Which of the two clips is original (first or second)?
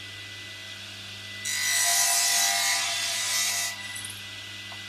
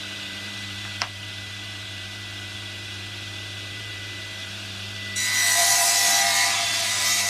first